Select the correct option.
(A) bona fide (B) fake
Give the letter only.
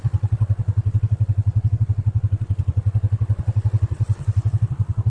B